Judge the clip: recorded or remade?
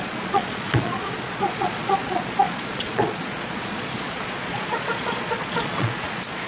remade